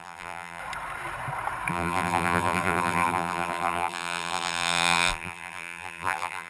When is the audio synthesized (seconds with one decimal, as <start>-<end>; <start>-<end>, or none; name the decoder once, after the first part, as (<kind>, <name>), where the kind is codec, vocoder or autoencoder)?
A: 0.0-0.6 (vocoder, BigVGAN v2); 1.7-6.5